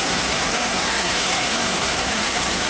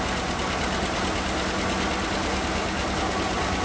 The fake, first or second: first